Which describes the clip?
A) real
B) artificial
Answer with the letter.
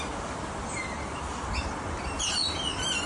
A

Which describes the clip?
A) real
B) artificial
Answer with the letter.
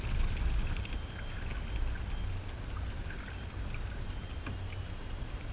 A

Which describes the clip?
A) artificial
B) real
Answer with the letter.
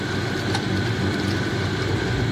B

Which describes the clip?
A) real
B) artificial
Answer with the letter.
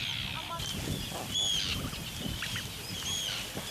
A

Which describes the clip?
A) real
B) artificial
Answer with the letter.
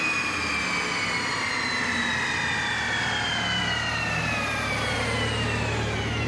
A